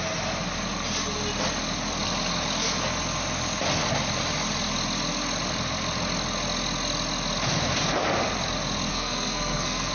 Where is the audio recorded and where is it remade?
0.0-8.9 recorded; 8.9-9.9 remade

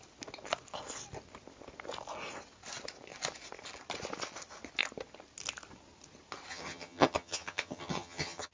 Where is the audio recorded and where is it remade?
0.0-6.5 recorded; 6.5-8.5 remade